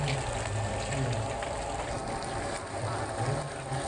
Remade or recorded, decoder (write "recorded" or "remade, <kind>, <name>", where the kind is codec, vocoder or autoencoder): recorded